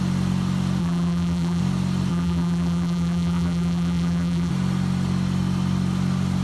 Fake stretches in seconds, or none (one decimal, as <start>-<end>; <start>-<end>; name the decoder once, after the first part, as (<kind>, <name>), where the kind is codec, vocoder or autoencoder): 0.8-1.6 (vocoder, BigVGAN v2); 2.1-4.5